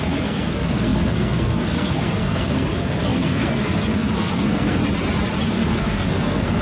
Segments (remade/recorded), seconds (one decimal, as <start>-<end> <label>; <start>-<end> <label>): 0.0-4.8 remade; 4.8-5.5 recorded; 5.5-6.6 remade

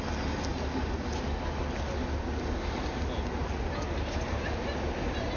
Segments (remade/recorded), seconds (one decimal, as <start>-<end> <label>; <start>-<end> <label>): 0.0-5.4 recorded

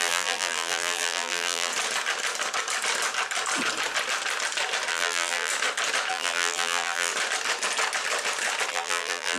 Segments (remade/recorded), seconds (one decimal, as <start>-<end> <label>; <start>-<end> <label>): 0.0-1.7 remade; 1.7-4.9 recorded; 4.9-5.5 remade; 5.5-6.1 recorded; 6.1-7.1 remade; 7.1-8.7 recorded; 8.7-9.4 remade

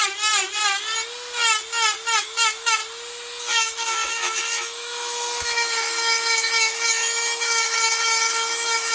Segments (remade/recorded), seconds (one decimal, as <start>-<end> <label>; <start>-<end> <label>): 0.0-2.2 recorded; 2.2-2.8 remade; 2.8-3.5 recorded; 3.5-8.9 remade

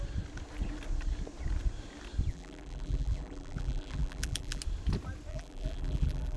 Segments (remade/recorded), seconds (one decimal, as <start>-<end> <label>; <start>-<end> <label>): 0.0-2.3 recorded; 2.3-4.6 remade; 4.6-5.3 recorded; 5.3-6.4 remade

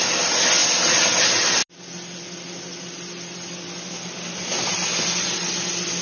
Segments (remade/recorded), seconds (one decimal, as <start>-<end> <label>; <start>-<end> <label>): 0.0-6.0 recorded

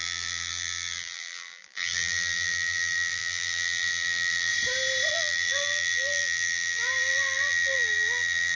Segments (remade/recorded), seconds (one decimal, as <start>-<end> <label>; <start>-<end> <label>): 0.0-4.5 remade; 4.5-5.1 recorded; 5.1-8.5 remade

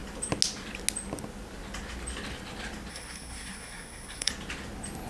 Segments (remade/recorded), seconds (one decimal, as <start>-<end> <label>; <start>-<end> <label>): 0.0-2.9 recorded; 2.9-4.3 remade; 4.3-5.1 recorded